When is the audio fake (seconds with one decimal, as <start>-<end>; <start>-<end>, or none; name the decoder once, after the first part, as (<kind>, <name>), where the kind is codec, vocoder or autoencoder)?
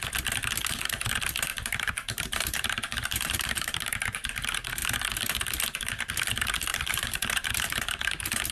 1.5-4.3 (vocoder, BigVGAN v2); 6.7-8.0